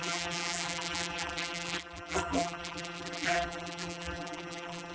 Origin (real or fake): fake